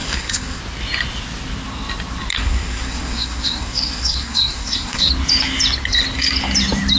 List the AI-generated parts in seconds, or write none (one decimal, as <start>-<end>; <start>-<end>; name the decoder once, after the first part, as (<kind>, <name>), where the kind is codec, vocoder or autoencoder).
0.0-0.6 (codec, SNAC); 2.3-5.1